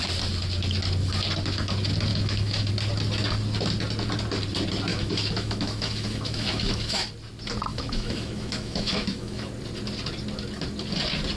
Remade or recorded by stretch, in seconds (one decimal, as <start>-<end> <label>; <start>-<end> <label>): 0.0-2.1 recorded; 2.1-2.7 remade; 2.7-4.9 recorded; 4.9-7.1 remade; 7.1-7.7 recorded; 7.7-9.5 remade; 9.5-11.4 recorded